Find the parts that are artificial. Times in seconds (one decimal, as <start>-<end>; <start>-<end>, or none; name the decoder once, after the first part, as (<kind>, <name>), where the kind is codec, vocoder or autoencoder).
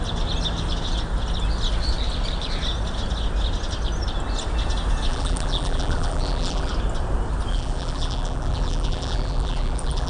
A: 5.1-6.7 (vocoder, BigVGAN v2); 7.5-10.1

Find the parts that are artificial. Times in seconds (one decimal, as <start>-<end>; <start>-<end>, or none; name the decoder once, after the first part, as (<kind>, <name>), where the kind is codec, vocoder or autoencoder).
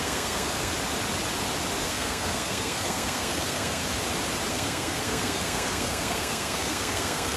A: 0.0-0.7 (codec, SNAC); 1.8-3.8; 4.5-7.4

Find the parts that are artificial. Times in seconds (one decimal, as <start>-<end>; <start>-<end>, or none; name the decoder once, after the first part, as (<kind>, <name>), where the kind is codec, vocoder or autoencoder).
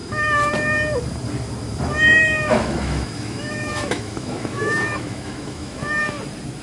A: 0.0-0.5 (autoencoder, DAC-VAE); 2.2-5.8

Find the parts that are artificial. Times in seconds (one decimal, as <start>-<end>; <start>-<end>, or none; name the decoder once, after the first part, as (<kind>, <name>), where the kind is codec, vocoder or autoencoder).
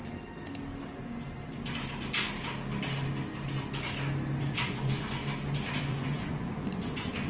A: 4.4-5.2 (vocoder, Vocos); 5.8-7.3